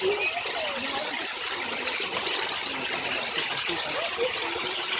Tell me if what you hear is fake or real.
real